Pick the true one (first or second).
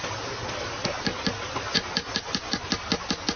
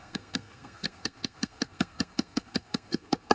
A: first